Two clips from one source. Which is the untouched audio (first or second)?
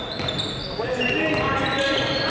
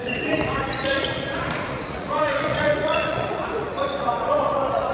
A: first